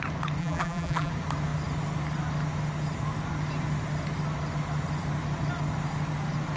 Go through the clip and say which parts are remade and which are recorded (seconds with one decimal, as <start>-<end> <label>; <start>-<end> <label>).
0.0-0.4 recorded; 0.4-1.1 remade; 1.1-6.6 recorded